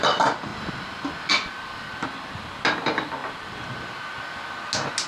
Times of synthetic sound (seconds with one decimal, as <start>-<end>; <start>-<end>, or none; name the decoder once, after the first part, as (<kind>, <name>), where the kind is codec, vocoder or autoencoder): 0.0-0.5 (vocoder, BigVGAN v2); 1.6-2.0; 2.7-3.2